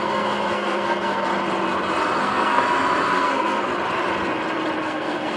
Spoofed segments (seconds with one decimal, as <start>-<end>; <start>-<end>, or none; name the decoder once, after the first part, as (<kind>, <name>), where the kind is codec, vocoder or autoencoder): 0.0-1.3 (codec, SNAC); 2.2-2.6; 3.1-3.7; 4.8-5.4